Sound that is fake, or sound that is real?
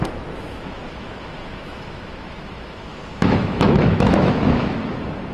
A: fake